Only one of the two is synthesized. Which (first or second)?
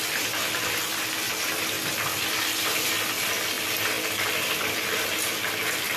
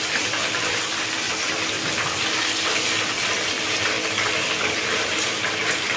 second